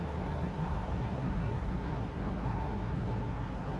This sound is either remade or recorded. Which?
remade